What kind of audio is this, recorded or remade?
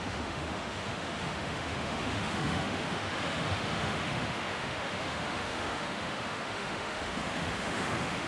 remade